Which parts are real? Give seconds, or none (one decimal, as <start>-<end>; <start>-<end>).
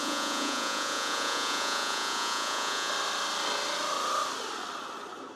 2.9-5.4